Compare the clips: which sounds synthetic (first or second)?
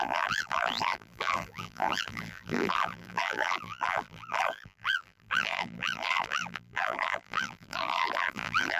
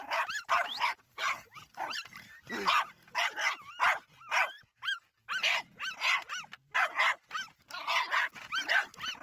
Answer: first